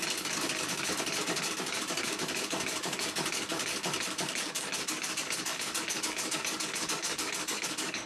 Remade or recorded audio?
remade